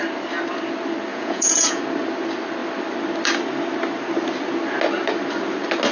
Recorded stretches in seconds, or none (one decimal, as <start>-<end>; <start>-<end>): 0.0-1.1; 1.8-5.9